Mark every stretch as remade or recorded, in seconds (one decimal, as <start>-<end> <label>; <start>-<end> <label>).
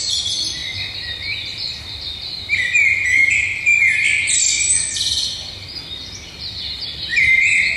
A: 0.0-0.6 recorded; 0.6-4.4 remade; 4.4-7.1 recorded; 7.1-7.8 remade